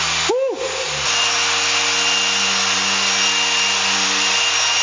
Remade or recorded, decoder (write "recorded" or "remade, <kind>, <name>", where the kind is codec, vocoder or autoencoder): recorded